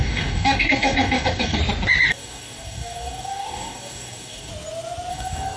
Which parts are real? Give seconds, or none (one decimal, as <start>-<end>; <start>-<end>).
1.6-2.1; 4.5-5.1